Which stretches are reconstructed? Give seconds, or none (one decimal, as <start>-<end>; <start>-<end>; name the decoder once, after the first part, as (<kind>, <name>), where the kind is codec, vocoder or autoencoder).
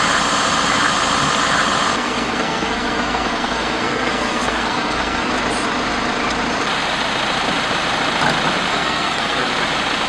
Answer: 1.9-5.3 (codec, SNAC); 8.7-9.5